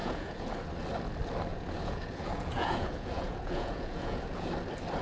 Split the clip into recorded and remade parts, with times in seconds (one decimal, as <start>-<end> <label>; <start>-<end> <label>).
0.0-0.5 remade; 0.5-1.5 recorded; 1.5-4.5 remade; 4.5-5.0 recorded